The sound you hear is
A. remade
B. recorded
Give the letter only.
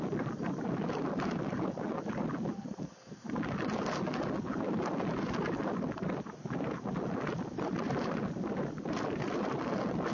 B